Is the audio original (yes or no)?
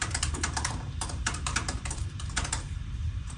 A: no